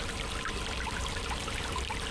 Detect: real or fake real